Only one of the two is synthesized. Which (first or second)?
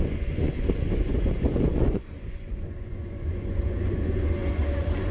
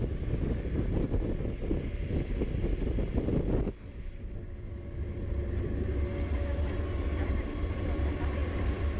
first